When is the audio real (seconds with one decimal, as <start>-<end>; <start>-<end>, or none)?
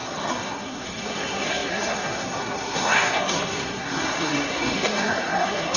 none